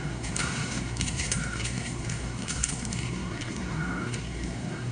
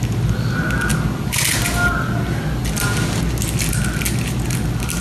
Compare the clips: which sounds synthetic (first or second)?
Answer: first